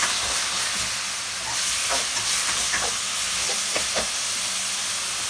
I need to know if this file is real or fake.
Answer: fake